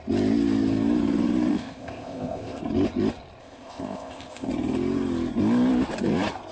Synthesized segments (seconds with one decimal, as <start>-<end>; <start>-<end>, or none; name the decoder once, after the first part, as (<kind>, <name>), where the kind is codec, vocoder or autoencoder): 1.5-2.6 (codec, ZipCodec); 3.4-4.5